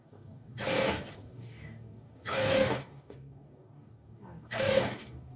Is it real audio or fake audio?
fake